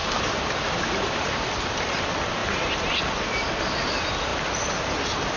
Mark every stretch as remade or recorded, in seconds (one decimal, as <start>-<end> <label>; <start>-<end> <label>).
0.0-2.0 remade; 2.0-5.4 recorded